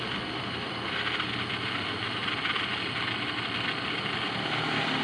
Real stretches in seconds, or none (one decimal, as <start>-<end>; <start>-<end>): 0.0-5.0